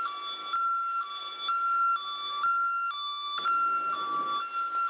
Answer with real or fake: real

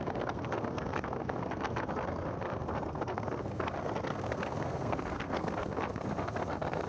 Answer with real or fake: fake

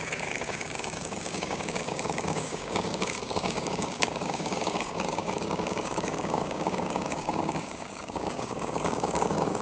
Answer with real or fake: fake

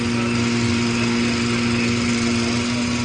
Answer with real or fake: real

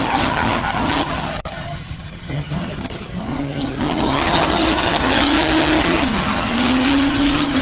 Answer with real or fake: fake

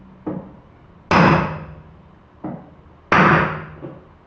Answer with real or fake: real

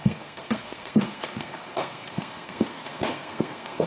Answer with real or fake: fake